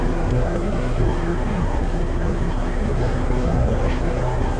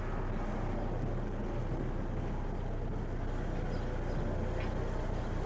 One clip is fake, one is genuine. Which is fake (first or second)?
first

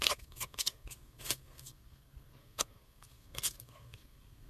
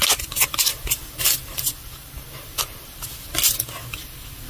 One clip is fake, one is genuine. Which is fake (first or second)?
first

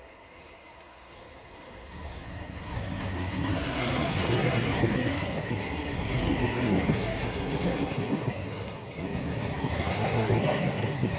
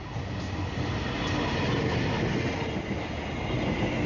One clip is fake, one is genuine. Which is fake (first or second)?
first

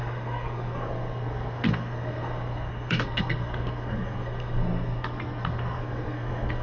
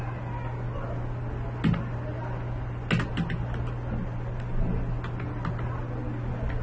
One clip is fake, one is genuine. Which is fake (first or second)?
first